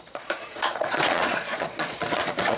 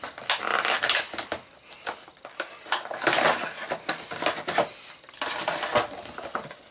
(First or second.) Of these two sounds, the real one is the second